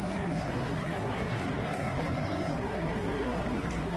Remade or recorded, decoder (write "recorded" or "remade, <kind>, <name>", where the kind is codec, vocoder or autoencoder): remade, codec, SNAC